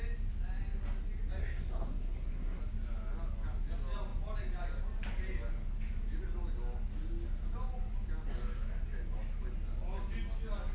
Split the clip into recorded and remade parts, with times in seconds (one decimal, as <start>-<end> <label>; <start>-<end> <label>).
0.0-1.4 recorded; 1.4-2.6 remade; 2.6-10.7 recorded